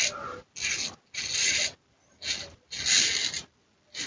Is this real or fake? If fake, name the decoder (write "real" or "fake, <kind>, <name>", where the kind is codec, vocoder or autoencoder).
real